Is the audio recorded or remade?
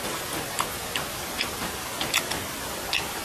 recorded